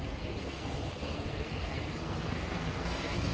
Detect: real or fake fake